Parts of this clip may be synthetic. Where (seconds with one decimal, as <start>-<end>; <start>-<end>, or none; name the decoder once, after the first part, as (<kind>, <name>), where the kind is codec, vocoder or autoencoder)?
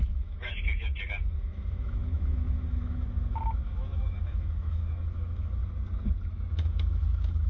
0.0-0.5 (autoencoder, DAC-VAE); 1.4-5.6; 6.5-7.5